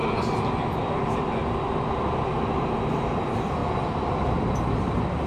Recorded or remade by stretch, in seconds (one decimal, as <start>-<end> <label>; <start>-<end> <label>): 0.0-5.3 recorded